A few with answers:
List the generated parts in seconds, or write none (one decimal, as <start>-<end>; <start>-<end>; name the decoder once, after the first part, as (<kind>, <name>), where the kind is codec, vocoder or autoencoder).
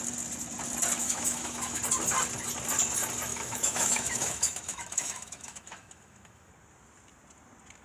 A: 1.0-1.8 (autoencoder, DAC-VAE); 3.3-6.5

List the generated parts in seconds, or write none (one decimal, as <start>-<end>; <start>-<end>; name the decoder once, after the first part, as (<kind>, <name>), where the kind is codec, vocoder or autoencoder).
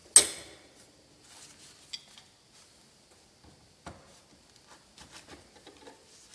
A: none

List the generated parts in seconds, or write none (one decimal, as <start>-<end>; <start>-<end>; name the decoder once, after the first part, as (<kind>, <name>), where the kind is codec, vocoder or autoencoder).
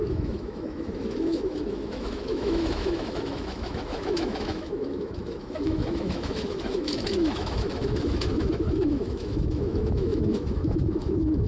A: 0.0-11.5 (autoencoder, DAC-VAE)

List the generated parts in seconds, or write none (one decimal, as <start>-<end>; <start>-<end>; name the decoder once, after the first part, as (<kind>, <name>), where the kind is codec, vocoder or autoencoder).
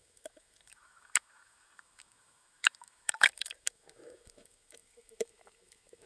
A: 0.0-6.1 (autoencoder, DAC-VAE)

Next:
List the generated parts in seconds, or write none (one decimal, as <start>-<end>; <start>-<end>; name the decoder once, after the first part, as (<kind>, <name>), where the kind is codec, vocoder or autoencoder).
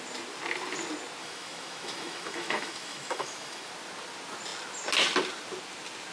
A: 1.2-3.7 (autoencoder, DAC-VAE)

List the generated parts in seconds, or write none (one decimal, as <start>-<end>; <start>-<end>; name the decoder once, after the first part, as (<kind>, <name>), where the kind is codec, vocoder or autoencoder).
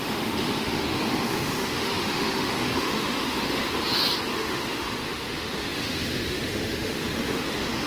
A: 0.0-3.6 (autoencoder, DAC-VAE); 4.3-7.9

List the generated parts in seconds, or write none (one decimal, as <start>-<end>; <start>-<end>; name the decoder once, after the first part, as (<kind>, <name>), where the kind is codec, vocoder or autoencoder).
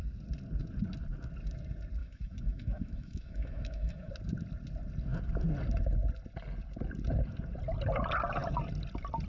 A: 2.0-4.1 (autoencoder, DAC-VAE)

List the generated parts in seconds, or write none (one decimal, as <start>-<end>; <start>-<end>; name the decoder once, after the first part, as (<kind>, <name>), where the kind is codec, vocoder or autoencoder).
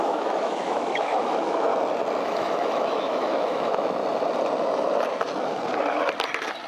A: 0.0-1.7 (autoencoder, DAC-VAE); 2.2-4.0